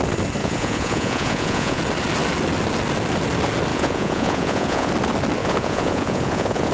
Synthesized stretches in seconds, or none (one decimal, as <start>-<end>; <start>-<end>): 0.4-1.8; 3.7-4.9; 5.4-6.7